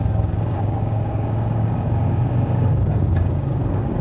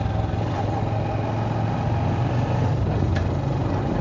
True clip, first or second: second